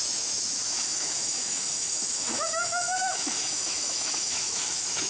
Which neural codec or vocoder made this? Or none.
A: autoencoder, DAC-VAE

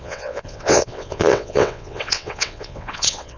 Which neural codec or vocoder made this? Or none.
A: vocoder, WaveNeXt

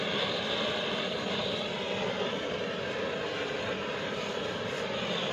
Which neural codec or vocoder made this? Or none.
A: none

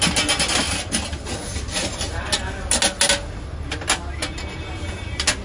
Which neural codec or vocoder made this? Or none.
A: none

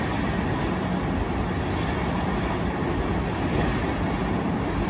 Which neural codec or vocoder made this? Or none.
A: none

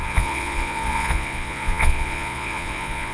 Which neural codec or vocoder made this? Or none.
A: vocoder, Vocos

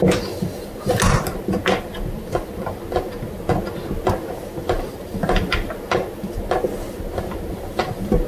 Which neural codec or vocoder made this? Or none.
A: none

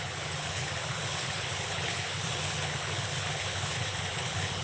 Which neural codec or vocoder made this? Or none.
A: codec, HILCodec